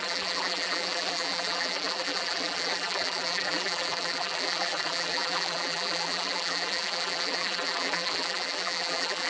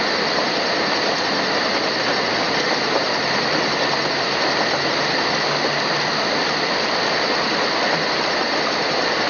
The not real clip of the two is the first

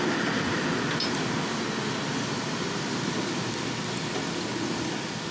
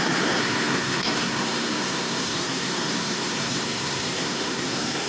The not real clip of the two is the second